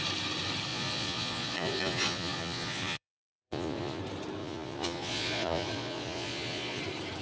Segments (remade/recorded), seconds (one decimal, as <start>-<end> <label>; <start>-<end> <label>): 0.0-0.7 recorded; 0.7-4.0 remade; 4.0-4.4 recorded; 4.4-6.8 remade; 6.8-7.2 recorded